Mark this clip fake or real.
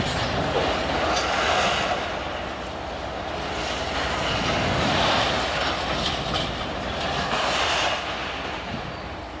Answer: real